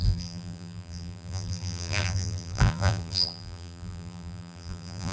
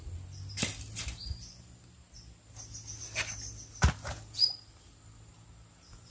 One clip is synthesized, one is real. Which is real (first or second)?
second